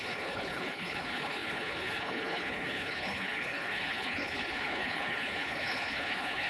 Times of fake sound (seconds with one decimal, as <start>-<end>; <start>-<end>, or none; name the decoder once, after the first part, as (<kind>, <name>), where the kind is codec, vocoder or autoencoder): 0.0-6.5 (codec, HILCodec)